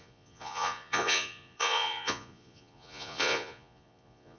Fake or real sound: fake